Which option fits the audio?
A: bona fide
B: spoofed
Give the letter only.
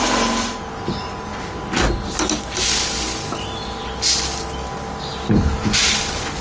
A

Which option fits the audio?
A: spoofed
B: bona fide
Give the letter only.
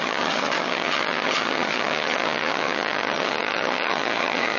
A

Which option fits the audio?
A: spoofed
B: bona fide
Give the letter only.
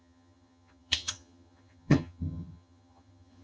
A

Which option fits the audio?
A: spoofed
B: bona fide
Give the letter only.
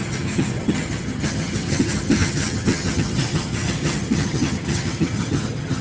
A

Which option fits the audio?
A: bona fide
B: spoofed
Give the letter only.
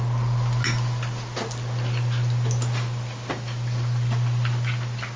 A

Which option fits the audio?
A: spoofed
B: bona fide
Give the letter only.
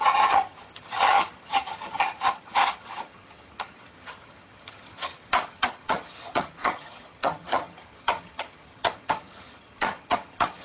A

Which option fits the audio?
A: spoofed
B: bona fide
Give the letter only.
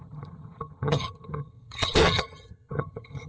A